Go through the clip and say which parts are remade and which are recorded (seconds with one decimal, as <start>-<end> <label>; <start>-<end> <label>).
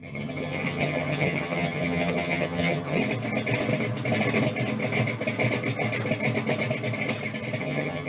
0.0-3.0 remade; 3.0-7.6 recorded; 7.6-8.1 remade